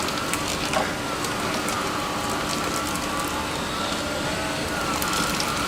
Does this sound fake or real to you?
fake